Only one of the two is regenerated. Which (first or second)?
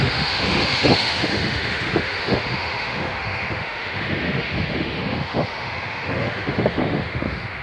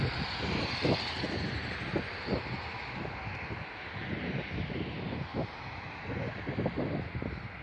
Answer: first